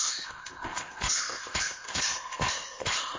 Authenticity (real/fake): fake